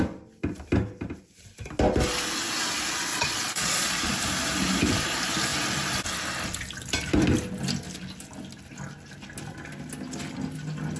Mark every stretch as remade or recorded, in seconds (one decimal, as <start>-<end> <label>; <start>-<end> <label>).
0.0-3.1 recorded; 3.1-4.1 remade; 4.1-11.0 recorded